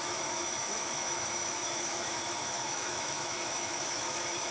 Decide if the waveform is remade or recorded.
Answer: remade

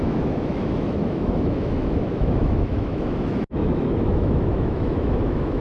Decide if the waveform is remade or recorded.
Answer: remade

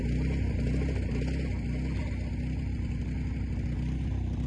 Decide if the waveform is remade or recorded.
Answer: recorded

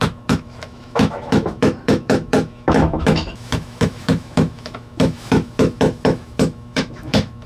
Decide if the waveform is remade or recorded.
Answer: remade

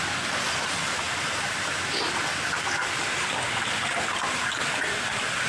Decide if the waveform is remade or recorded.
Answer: recorded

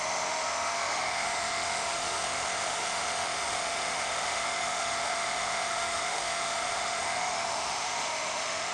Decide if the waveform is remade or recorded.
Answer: remade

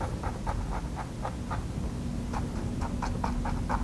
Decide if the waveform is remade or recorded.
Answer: recorded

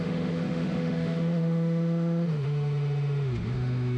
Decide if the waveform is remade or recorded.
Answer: remade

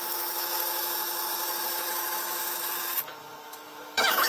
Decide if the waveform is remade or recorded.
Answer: remade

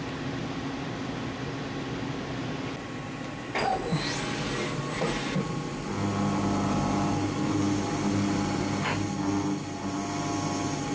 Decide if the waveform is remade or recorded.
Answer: recorded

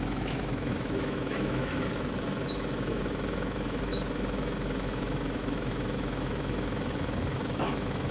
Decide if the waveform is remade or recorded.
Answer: remade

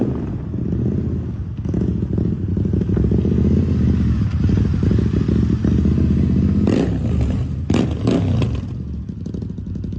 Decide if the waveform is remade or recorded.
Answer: recorded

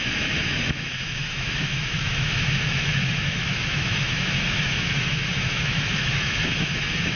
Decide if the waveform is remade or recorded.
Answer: remade